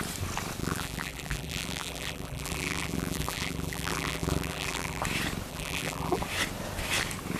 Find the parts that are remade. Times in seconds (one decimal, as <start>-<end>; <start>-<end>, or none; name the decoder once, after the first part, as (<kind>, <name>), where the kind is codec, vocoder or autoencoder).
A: 0.6-5.0 (vocoder, BigVGAN v2); 5.5-6.2